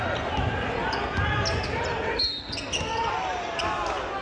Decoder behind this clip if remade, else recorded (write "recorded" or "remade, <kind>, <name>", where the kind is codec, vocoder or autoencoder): recorded